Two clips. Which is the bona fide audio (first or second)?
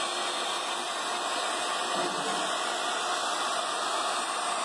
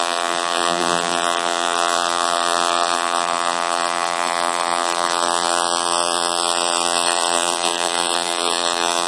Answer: first